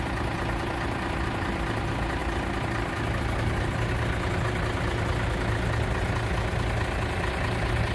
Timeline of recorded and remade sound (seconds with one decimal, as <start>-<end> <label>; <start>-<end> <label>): 0.0-7.9 recorded